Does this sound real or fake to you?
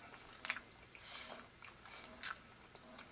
real